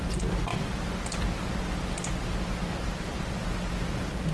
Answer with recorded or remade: recorded